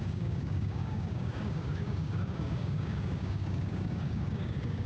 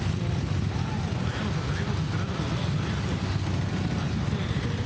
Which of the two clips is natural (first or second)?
second